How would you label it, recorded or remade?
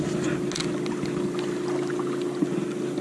recorded